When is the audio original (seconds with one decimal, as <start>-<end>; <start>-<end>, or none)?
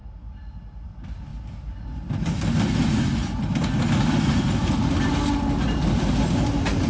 0.0-6.9